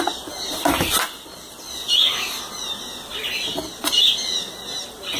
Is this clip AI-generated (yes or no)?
no